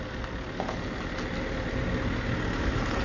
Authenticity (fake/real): real